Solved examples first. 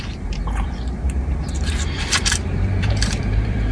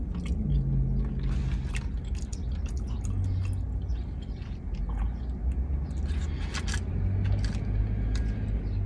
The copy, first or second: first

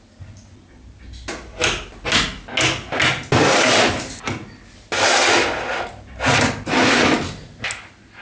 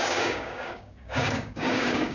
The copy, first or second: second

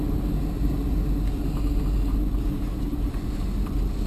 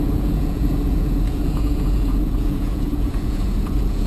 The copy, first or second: second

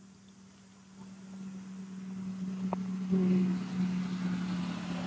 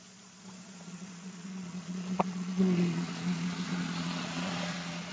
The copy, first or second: second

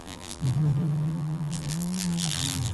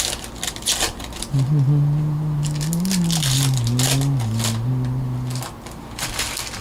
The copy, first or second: first